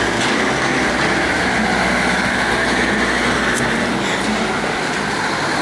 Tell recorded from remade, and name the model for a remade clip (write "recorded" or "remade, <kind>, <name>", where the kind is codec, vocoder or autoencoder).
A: recorded